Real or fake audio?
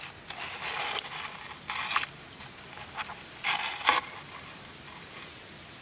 real